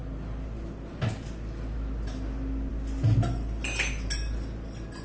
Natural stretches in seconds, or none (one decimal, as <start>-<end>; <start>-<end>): 0.0-5.0